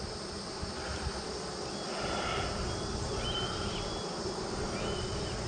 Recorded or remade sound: recorded